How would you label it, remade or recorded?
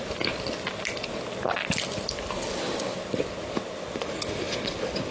recorded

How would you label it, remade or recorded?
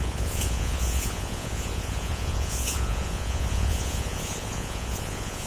remade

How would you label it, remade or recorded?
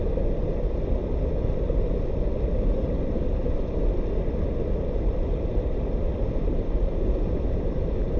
recorded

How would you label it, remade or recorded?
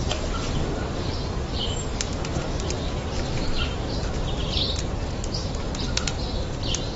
recorded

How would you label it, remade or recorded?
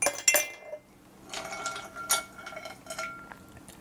recorded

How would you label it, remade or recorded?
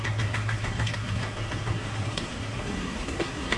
remade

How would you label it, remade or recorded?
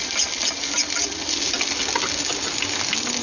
recorded